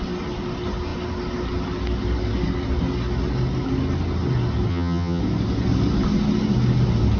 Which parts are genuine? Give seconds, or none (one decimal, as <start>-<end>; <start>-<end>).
0.0-4.7; 5.2-7.2